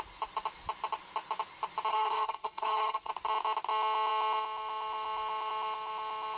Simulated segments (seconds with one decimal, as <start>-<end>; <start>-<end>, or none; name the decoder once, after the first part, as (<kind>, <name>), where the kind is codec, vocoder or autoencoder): 1.9-3.1 (codec, HILCodec)